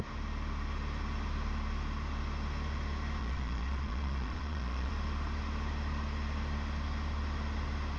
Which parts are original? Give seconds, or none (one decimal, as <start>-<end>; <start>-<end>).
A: 0.0-3.2; 4.9-8.0